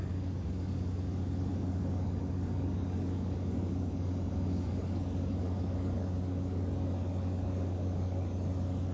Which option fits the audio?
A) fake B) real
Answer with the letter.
A